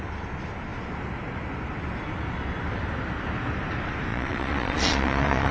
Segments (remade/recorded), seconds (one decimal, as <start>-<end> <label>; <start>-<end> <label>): 0.0-4.1 recorded; 4.1-5.5 remade